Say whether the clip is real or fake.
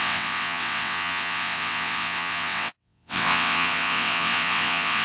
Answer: fake